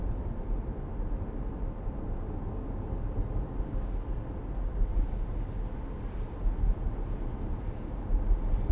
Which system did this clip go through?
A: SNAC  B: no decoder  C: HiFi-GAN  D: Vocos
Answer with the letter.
B